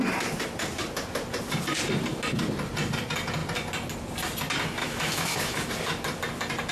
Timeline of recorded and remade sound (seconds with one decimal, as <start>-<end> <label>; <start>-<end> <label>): 0.0-4.8 recorded; 4.8-5.7 remade; 5.7-6.7 recorded